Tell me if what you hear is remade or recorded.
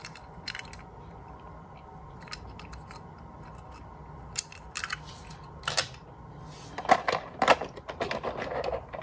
recorded